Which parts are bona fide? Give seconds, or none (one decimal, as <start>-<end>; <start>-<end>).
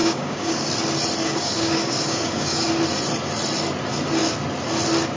0.7-1.2; 2.7-5.2